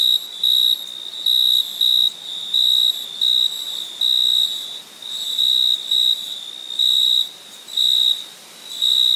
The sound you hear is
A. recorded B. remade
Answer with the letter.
A